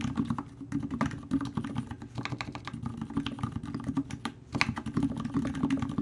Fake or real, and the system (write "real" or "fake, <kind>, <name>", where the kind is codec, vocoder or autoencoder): real